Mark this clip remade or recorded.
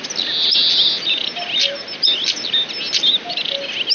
recorded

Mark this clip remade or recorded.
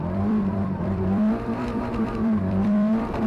remade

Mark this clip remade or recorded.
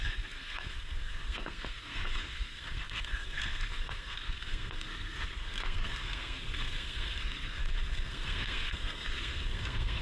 remade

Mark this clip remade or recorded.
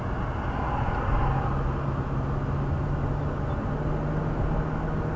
recorded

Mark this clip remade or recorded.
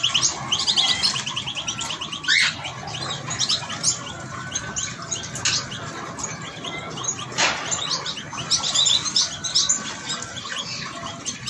recorded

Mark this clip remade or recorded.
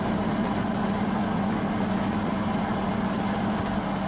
recorded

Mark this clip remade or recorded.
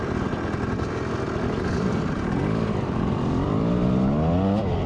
remade